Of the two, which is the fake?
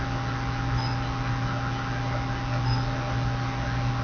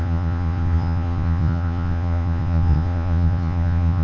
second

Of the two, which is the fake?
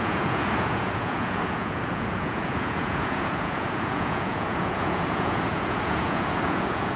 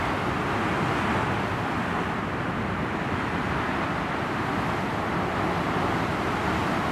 first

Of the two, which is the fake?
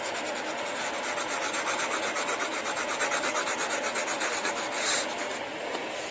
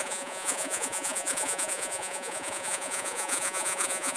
second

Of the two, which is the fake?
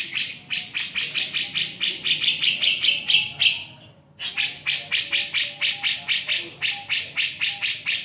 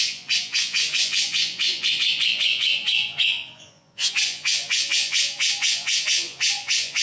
second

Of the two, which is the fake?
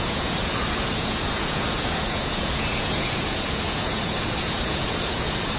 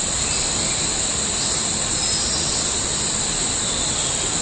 first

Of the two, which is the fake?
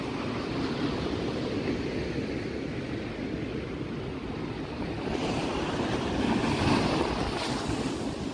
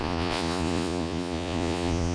second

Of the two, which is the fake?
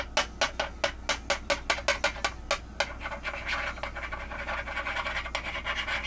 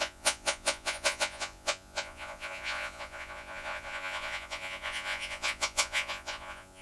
second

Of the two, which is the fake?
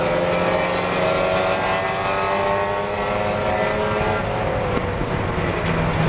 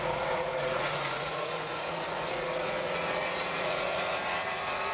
second